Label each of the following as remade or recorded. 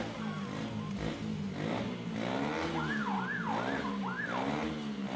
recorded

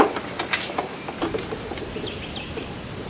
recorded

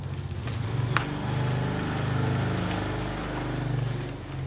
recorded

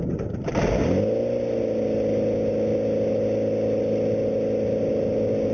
recorded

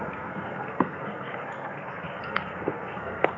remade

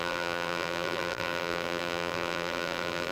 remade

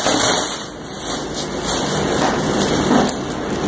recorded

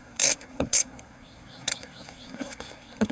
remade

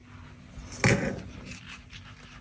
recorded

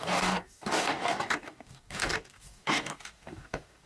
remade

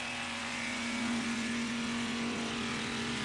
remade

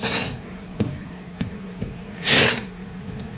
remade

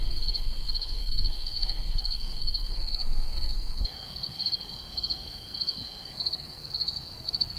remade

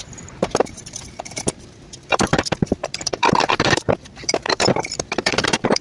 remade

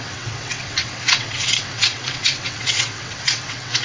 remade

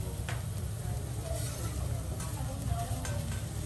recorded